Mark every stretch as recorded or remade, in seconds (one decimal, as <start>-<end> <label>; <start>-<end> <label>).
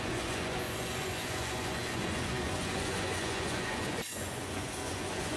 0.0-5.4 remade